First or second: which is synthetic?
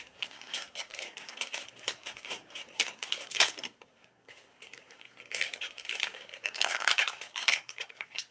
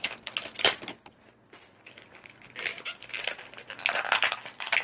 first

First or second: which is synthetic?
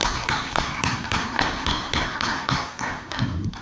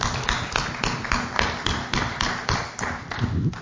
first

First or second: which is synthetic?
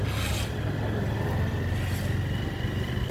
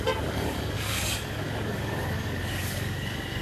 second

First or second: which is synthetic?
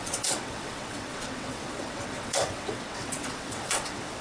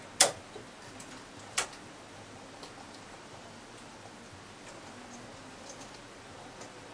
first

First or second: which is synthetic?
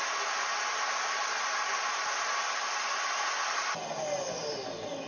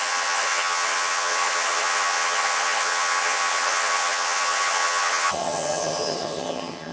second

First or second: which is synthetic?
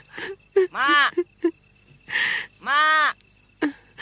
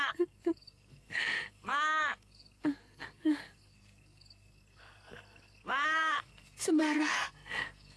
second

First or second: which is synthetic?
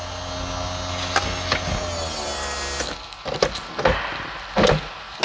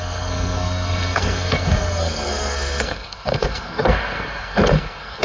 second